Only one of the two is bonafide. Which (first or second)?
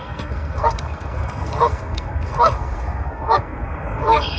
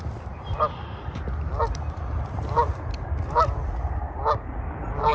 second